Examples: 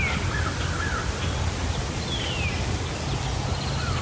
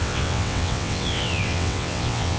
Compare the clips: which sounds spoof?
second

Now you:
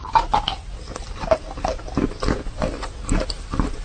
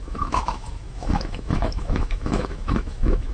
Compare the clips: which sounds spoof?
second